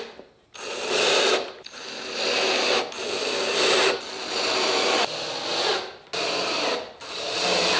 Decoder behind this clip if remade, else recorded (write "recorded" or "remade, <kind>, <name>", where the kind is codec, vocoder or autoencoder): recorded